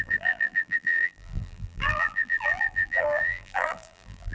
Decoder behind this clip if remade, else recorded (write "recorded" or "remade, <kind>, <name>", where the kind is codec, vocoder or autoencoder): remade, vocoder, BigVGAN v2